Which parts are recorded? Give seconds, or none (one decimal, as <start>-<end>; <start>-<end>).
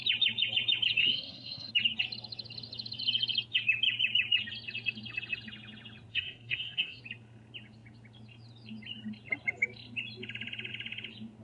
0.0-1.0; 1.7-6.1; 7.0-11.4